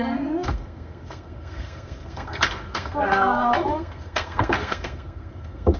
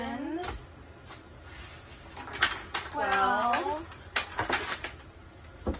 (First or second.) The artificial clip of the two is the first